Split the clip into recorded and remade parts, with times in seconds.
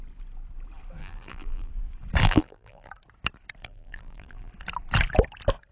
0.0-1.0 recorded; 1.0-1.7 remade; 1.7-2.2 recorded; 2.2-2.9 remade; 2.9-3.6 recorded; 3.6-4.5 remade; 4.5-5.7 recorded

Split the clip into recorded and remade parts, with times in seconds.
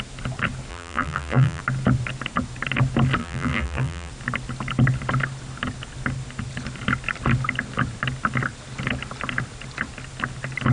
0.0-0.7 recorded; 0.7-1.6 remade; 1.6-3.2 recorded; 3.2-4.1 remade; 4.1-10.7 recorded